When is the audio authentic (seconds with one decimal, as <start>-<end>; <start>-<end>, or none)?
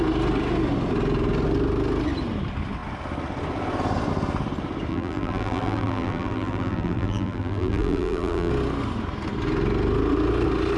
0.0-4.9; 8.5-10.8